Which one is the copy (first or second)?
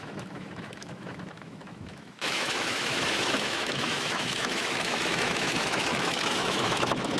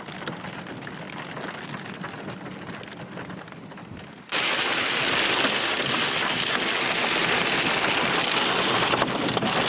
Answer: first